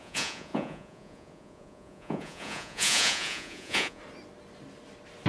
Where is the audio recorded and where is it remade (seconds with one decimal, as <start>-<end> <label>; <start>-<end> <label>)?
0.0-4.0 remade; 4.0-5.3 recorded